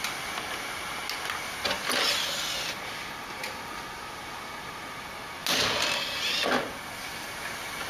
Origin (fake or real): real